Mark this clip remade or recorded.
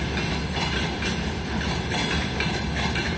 recorded